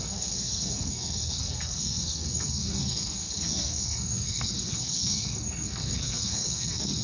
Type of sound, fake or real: fake